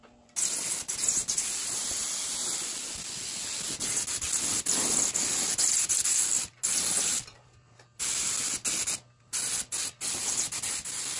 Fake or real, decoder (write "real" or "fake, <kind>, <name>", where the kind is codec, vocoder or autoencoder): real